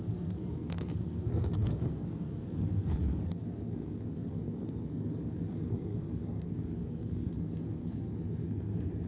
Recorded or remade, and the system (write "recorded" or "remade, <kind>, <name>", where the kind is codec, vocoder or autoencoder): remade, codec, SNAC